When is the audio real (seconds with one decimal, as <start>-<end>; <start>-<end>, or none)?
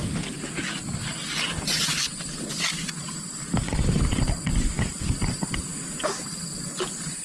5.7-6.6